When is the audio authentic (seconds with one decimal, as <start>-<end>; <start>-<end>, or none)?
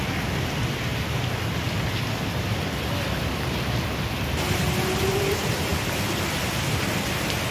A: 0.0-7.5